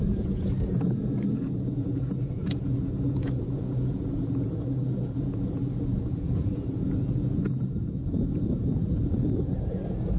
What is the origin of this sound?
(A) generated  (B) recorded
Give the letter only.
A